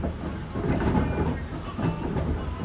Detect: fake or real real